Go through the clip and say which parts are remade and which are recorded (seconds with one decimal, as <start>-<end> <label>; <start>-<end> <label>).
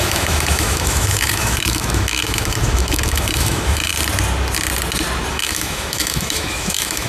0.0-3.9 remade; 3.9-5.3 recorded; 5.3-7.1 remade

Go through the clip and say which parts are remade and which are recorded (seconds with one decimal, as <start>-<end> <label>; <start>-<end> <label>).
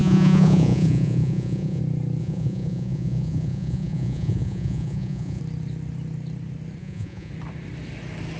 0.0-1.8 remade; 1.8-2.2 recorded; 2.2-5.4 remade; 5.4-6.8 recorded; 6.8-7.3 remade; 7.3-8.4 recorded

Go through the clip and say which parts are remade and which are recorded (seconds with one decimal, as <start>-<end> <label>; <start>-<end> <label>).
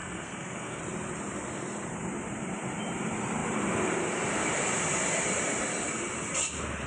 0.0-0.8 remade; 0.8-6.9 recorded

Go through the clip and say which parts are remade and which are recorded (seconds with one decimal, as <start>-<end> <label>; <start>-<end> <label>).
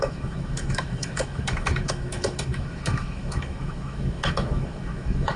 0.0-5.4 remade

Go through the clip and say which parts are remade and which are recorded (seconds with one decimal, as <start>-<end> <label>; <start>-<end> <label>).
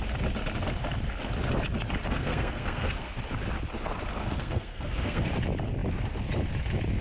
0.0-2.1 recorded; 2.1-3.2 remade; 3.2-4.2 recorded; 4.2-5.3 remade; 5.3-7.0 recorded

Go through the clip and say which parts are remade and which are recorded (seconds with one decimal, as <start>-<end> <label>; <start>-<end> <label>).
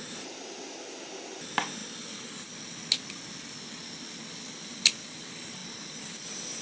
0.0-6.6 recorded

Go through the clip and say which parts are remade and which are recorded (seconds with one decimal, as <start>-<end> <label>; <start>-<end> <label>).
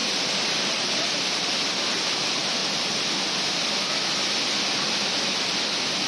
0.0-1.3 remade; 1.3-6.1 recorded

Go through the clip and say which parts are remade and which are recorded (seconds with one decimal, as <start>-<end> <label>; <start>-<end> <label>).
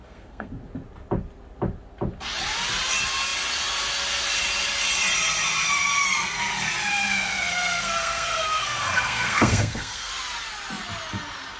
0.0-0.5 remade; 0.5-6.9 recorded; 6.9-10.1 remade; 10.1-11.6 recorded